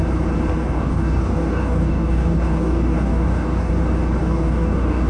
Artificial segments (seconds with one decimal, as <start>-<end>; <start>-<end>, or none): 0.6-3.7; 4.2-5.1